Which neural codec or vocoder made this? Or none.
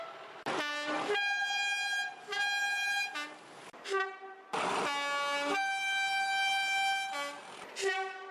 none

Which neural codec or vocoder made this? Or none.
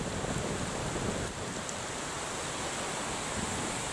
vocoder, BigVGAN v2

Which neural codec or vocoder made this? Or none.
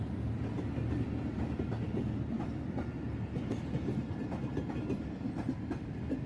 none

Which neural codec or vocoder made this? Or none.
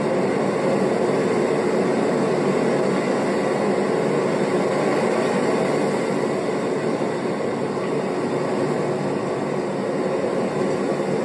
none